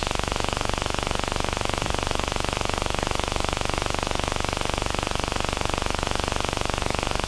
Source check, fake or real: fake